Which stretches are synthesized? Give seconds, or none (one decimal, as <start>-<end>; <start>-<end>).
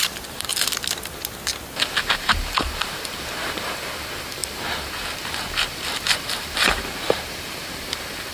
0.0-0.5; 2.0-8.3